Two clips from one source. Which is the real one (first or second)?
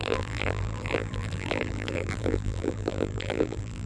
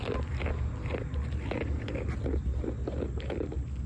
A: second